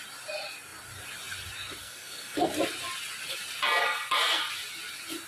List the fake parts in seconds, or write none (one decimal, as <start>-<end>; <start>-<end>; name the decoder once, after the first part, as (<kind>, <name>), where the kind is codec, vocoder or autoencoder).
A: 1.8-2.5 (codec, SNAC); 3.8-4.5